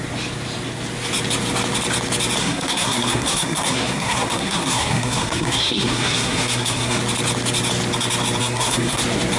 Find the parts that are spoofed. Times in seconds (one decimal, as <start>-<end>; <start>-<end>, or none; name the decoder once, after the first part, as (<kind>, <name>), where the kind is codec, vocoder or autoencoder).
2.4-7.0 (codec, SNAC); 8.4-9.0